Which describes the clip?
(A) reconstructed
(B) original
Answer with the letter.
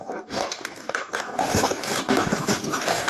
A